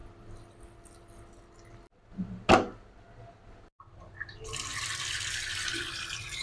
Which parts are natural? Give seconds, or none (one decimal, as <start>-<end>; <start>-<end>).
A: 0.0-6.4

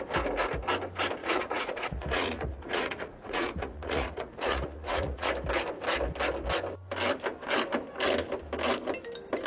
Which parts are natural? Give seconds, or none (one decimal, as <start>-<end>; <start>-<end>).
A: 0.0-1.2; 5.3-9.5